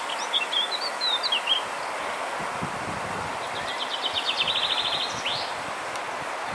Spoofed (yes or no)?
no